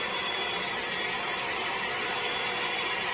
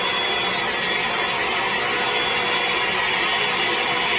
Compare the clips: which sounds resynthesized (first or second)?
first